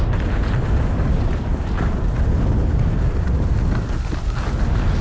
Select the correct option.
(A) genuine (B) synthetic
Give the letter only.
A